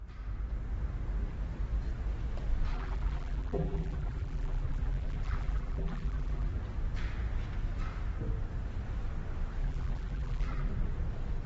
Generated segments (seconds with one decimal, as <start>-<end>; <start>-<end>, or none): 2.7-6.6; 9.6-10.7